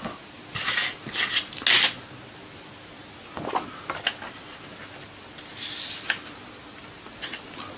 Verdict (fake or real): real